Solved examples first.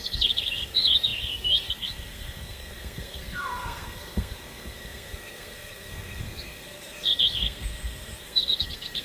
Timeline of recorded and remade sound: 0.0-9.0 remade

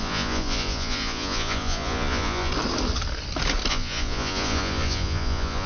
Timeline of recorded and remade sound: 0.0-2.5 remade; 2.5-3.7 recorded; 3.7-5.7 remade

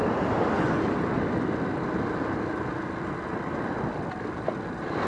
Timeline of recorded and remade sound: 0.0-5.1 recorded

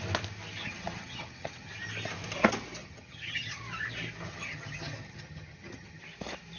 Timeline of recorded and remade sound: 0.0-0.6 recorded; 0.6-1.7 remade; 1.7-2.8 recorded; 2.8-3.6 remade; 3.6-4.3 recorded; 4.3-6.0 remade; 6.0-6.6 recorded

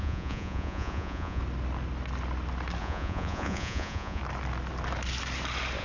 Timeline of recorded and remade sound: 0.0-1.4 remade; 1.4-2.8 recorded; 2.8-4.2 remade; 4.2-5.8 recorded

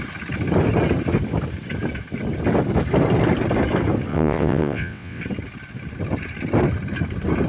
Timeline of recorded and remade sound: 0.0-4.1 recorded; 4.1-5.2 remade; 5.2-7.5 recorded

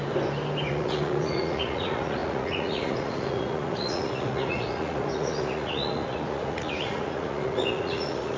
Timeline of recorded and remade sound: 0.0-0.7 recorded; 0.7-8.4 remade